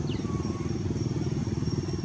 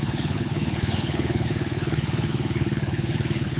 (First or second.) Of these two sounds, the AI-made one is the second